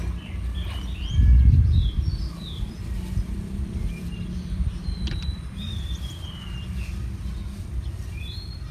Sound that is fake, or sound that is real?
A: fake